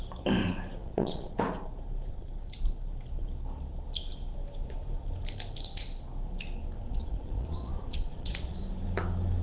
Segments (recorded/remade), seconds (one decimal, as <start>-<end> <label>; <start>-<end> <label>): 0.0-0.8 recorded; 0.8-1.4 remade; 1.4-6.8 recorded; 6.8-8.6 remade; 8.6-9.4 recorded